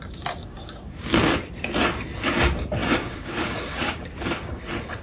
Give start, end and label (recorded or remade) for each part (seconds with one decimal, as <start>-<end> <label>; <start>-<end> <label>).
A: 0.0-0.4 recorded; 0.4-1.3 remade; 1.3-2.8 recorded; 2.8-4.6 remade; 4.6-5.0 recorded